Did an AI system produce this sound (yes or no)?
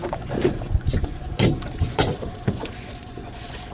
yes